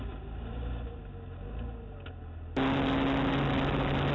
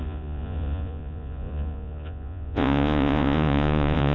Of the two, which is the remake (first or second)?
second